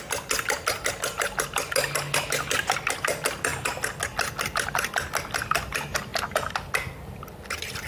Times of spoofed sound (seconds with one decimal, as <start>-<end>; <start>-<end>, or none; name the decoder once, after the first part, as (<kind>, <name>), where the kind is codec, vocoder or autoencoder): none

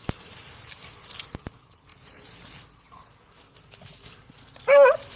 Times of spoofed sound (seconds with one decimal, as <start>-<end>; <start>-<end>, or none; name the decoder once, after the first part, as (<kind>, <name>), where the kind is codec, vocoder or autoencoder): 0.0-0.7 (vocoder, BigVGAN v2)

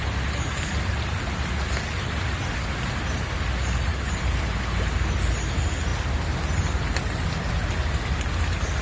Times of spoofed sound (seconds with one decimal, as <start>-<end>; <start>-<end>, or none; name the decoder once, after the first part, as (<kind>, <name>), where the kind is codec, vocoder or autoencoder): 3.9-4.6 (vocoder, BigVGAN v2)

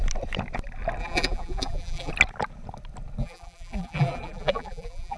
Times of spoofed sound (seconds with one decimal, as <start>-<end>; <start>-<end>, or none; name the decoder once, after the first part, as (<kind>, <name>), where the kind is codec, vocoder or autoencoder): 1.0-2.1 (vocoder, BigVGAN v2); 3.2-5.2

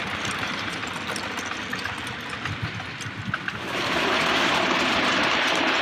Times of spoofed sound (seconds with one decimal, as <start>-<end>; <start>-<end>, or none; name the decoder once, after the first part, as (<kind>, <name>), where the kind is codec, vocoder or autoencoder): 0.0-0.8 (vocoder, BigVGAN v2); 4.3-5.8

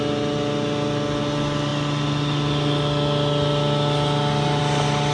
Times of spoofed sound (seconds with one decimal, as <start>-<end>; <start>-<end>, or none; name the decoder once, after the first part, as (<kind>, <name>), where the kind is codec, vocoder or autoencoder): none

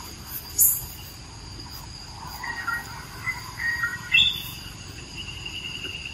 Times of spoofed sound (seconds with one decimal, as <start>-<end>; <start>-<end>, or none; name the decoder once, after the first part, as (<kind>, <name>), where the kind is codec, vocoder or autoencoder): 0.0-0.8 (vocoder, BigVGAN v2); 3.4-6.1